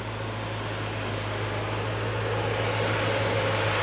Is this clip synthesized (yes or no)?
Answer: no